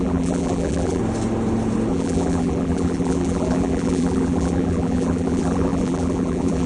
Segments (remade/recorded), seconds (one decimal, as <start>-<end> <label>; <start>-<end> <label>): 0.0-1.0 remade; 1.0-1.9 recorded; 1.9-6.7 remade